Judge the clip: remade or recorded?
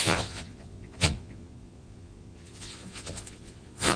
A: remade